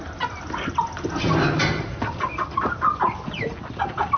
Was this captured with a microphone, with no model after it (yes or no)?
yes